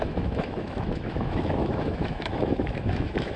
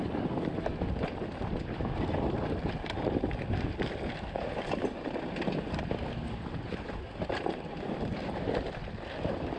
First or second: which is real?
second